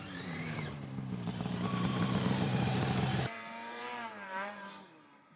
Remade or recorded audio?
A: remade